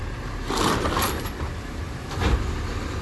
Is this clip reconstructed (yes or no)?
no